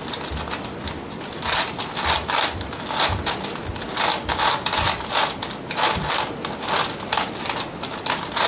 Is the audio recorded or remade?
recorded